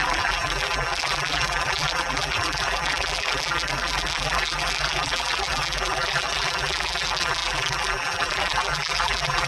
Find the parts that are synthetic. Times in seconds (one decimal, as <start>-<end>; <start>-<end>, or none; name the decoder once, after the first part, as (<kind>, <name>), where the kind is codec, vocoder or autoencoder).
0.0-9.5 (vocoder, BigVGAN v2)